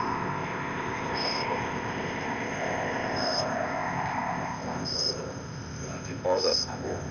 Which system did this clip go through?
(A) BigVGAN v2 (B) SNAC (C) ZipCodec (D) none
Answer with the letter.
C